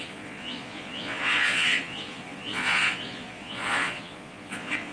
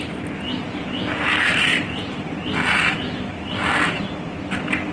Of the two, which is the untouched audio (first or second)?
second